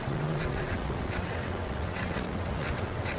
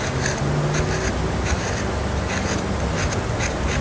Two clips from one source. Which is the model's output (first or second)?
first